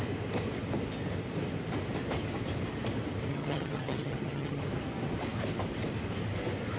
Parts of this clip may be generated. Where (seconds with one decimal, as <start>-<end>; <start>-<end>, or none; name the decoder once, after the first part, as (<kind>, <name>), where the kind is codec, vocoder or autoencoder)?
3.3-4.6 (vocoder, HiFi-GAN)